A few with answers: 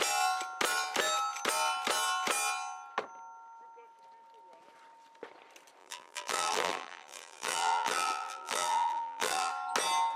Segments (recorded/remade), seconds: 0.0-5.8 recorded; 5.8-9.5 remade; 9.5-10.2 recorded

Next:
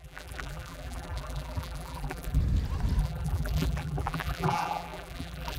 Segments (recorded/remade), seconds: 0.0-2.4 remade; 2.4-3.0 recorded; 3.0-5.6 remade

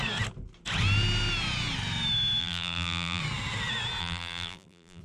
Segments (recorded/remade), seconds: 0.0-2.4 recorded; 2.4-3.2 remade; 3.2-4.0 recorded; 4.0-5.0 remade

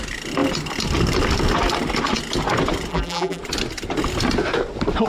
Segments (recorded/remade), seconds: 0.0-2.9 recorded; 2.9-3.4 remade; 3.4-5.1 recorded

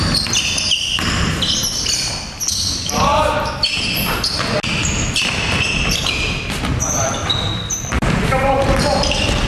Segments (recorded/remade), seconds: 0.0-1.6 remade; 1.6-2.2 recorded; 2.2-3.1 remade; 3.1-6.9 recorded; 6.9-9.5 remade

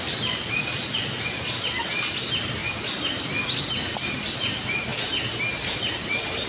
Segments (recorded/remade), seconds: 0.0-6.5 recorded